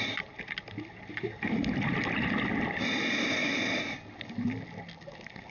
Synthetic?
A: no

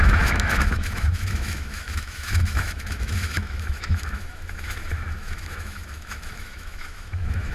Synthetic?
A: yes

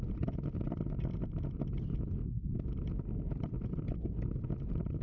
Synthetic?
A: no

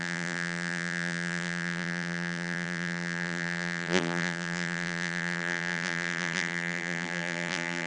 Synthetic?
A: yes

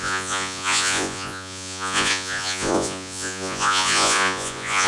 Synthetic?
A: yes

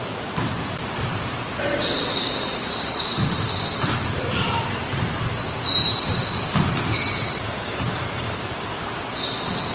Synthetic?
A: yes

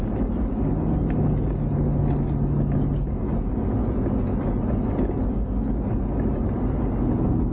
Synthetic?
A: no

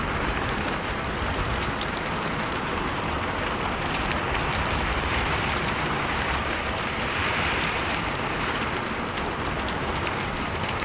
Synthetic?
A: yes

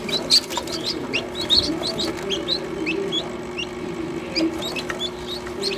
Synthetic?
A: no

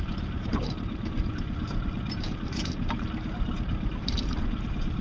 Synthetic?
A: yes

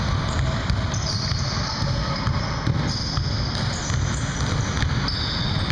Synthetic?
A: no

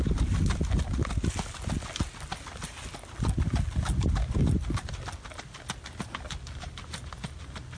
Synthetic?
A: no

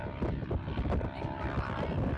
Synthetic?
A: yes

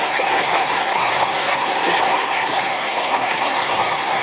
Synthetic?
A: yes